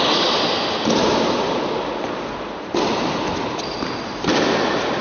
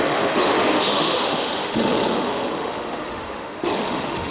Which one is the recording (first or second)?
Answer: first